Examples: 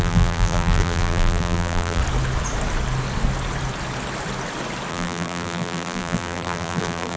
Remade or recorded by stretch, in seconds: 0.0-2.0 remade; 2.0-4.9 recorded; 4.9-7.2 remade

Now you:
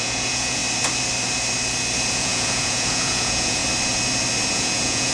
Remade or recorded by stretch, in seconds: 0.0-0.6 remade; 0.6-2.1 recorded; 2.1-3.6 remade; 3.6-4.5 recorded; 4.5-5.1 remade